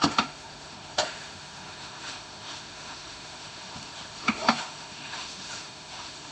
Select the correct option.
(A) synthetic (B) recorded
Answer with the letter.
A